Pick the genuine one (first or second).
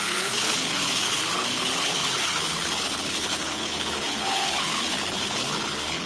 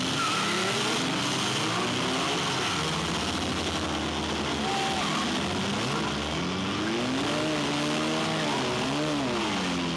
second